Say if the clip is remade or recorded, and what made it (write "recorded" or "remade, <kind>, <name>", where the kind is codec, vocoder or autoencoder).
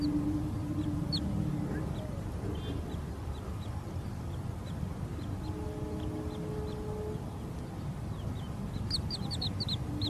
recorded